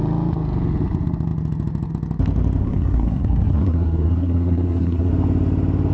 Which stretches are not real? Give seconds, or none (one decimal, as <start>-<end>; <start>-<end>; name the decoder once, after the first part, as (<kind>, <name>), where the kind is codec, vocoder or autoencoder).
2.6-5.1 (codec, SNAC)